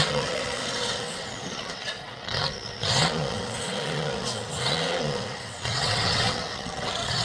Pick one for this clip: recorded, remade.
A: remade